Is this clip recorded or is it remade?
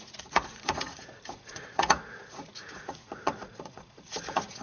remade